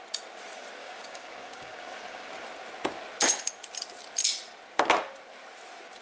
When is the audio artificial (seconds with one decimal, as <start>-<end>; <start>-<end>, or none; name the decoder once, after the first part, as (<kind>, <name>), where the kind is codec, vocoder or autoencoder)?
0.8-2.3 (codec, DAC)